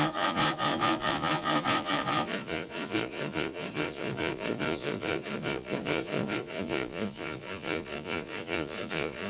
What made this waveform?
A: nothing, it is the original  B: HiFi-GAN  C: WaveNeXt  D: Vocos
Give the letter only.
D